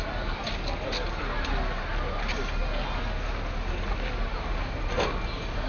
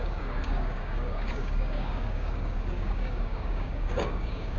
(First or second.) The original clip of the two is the first